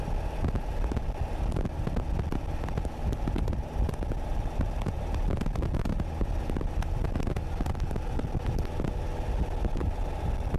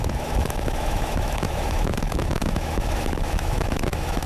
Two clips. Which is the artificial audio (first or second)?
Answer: second